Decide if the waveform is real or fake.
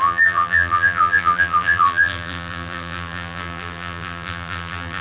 fake